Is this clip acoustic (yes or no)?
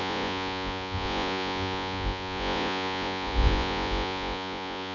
no